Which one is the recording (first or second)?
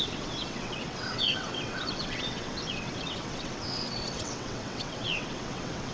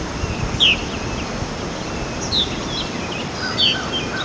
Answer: second